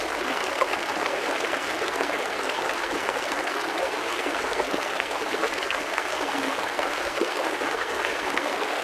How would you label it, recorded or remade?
remade